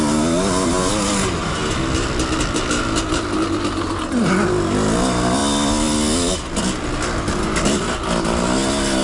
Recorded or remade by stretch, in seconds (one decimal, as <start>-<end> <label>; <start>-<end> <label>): 0.0-9.0 recorded

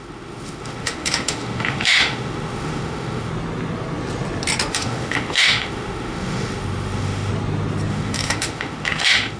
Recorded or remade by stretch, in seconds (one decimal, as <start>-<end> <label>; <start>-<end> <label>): 0.0-3.3 remade; 3.3-4.7 recorded; 4.7-7.3 remade; 7.3-7.9 recorded; 7.9-9.4 remade

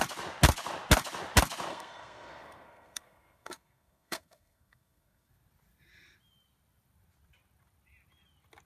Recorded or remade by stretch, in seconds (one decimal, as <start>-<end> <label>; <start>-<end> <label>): 0.0-1.7 recorded; 1.7-5.3 remade; 5.3-8.7 recorded

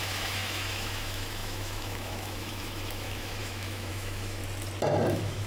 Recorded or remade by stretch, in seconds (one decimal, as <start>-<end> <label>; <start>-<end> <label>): 0.0-4.4 remade; 4.4-5.1 recorded; 5.1-5.5 remade

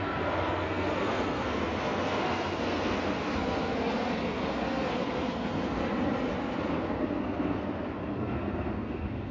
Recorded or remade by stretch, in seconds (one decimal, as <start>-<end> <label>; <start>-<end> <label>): 0.0-5.8 remade; 5.8-6.7 recorded; 6.7-9.3 remade

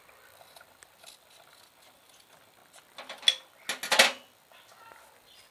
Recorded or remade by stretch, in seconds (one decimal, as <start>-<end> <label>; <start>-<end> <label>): 0.0-5.5 recorded